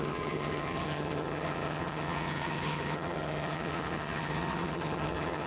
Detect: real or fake fake